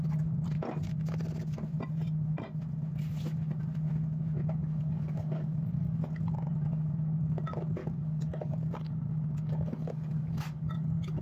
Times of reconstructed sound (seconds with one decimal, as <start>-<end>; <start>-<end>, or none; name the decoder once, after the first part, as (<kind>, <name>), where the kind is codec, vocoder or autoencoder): 4.6-6.3 (codec, DAC); 7.8-11.2